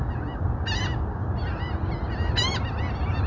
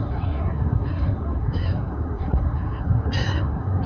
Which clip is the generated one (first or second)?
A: second